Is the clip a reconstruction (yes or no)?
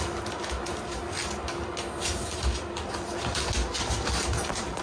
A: no